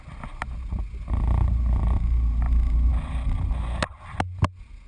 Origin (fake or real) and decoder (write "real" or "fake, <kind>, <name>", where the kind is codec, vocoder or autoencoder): real